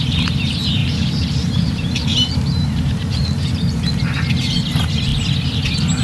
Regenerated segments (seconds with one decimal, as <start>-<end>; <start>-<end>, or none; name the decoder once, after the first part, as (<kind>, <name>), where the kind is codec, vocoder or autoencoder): 0.8-3.9 (vocoder, BigVGAN v2)